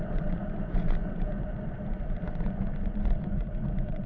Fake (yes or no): yes